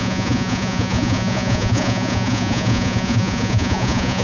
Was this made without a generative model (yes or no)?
no